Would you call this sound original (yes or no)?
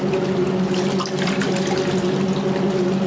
yes